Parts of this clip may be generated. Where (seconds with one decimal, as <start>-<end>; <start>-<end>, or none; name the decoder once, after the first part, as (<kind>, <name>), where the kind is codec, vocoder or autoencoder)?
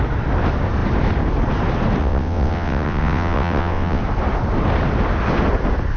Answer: 2.0-4.0 (vocoder, WaveNeXt)